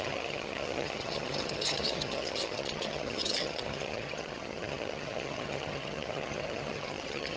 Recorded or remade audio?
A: remade